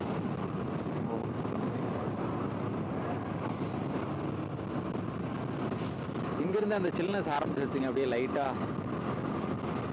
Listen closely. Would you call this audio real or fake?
real